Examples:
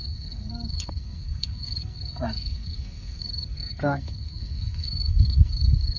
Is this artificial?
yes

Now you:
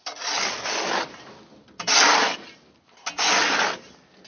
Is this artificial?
no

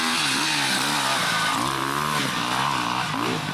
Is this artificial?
no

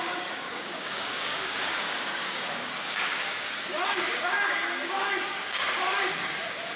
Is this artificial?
yes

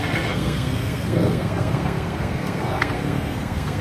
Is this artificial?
yes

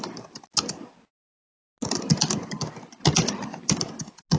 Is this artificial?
no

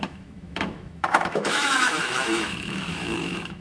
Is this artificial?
yes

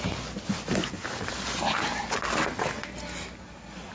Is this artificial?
no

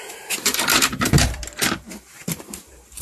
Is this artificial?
yes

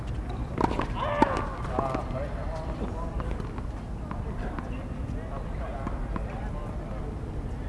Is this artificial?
no